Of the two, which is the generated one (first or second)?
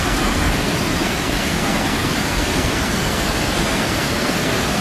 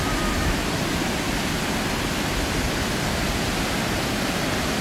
first